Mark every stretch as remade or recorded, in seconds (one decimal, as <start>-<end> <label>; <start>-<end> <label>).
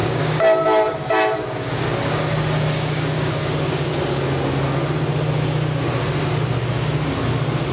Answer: 0.0-3.9 remade; 3.9-7.7 recorded